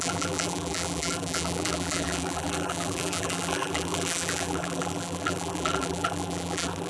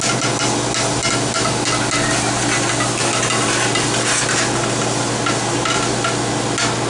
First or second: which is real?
second